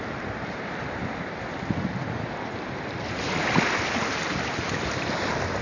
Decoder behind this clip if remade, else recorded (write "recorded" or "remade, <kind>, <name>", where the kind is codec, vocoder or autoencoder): recorded